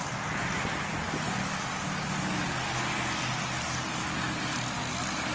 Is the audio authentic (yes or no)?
yes